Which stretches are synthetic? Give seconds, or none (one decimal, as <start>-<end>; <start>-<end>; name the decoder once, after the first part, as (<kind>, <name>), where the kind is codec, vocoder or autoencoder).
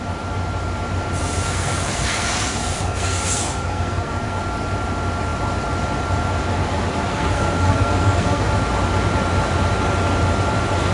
1.2-4.4 (codec, SNAC); 7.1-8.5